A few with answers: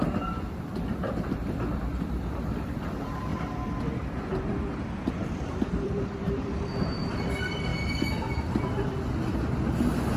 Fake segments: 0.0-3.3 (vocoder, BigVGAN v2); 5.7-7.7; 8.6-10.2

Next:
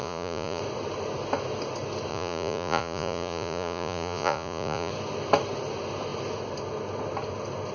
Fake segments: 0.0-0.6 (vocoder, Vocos); 2.1-4.9

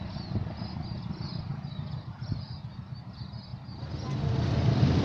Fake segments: none

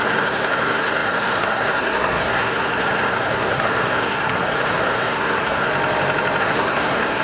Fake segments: 0.0-5.7 (codec, SNAC); 6.4-7.2

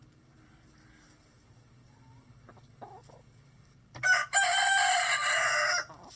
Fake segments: 4.2-5.1 (vocoder, BigVGAN v2)